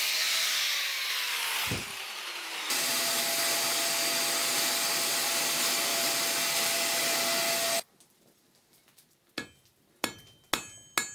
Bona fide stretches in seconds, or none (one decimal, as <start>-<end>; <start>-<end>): 0.0-1.9; 2.9-11.1

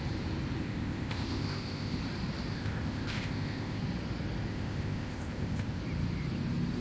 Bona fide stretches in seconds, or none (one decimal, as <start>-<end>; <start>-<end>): 0.0-0.6; 2.0-2.5; 3.8-4.5; 5.8-6.8

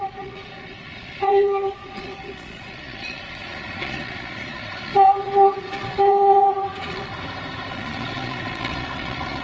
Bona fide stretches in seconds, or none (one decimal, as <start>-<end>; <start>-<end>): 7.1-7.7

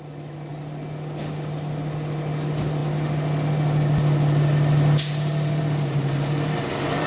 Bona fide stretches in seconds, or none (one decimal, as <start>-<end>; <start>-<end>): 0.0-7.1